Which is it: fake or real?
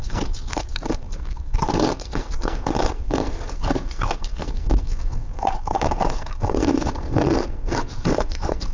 fake